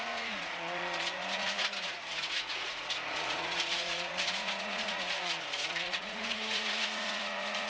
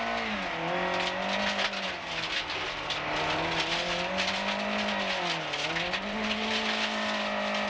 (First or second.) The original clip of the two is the second